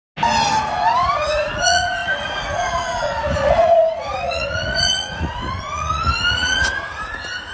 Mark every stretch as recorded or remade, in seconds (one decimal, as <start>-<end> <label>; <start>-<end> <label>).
0.0-0.6 recorded; 0.6-7.5 remade